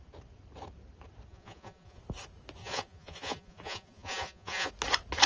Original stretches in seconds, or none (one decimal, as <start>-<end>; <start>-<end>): 0.0-1.3; 2.0-2.6; 4.7-5.3